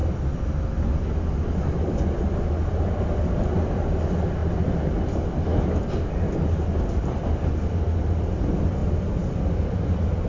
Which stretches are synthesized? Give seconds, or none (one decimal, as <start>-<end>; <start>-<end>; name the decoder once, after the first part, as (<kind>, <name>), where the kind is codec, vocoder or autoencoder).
none